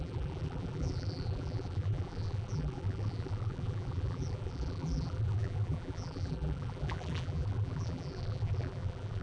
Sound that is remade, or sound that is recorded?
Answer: remade